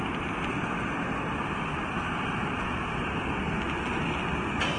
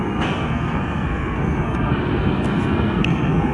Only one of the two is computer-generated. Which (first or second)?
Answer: second